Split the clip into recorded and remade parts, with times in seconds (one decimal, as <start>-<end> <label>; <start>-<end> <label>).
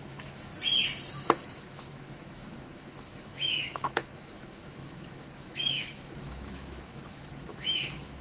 0.0-0.5 remade; 0.5-1.1 recorded; 1.1-8.2 remade